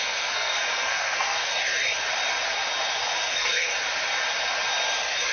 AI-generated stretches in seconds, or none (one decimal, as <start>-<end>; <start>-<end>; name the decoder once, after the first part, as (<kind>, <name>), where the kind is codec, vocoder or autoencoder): 0.0-1.5 (codec, SNAC); 3.3-3.7